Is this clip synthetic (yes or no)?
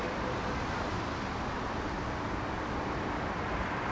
no